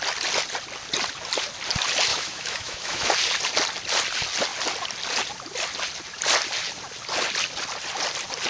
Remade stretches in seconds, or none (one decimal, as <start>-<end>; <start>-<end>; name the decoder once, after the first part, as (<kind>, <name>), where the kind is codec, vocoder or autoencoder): 2.1-3.1 (autoencoder, DAC-VAE)